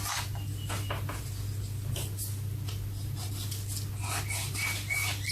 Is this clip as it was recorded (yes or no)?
yes